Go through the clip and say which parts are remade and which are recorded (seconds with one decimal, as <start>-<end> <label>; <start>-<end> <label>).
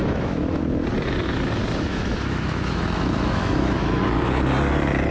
0.0-0.6 remade; 0.6-1.9 recorded; 1.9-4.0 remade; 4.0-5.1 recorded